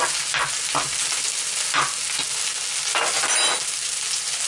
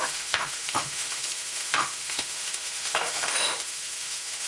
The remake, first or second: second